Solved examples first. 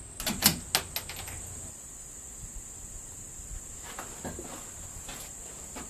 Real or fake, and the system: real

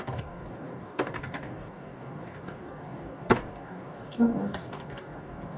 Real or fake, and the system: fake, codec, DAC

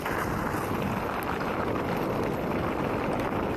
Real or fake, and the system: real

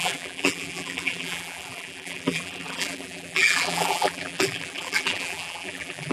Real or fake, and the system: fake, vocoder, BigVGAN v2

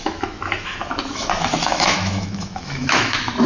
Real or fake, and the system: fake, autoencoder, DAC-VAE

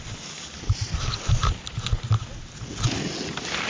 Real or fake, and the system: real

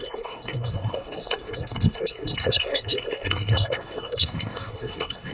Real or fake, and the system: fake, codec, SNAC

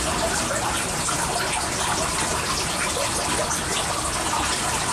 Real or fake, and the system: real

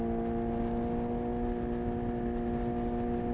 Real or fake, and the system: real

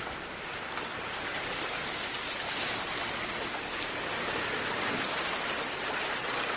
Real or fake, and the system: real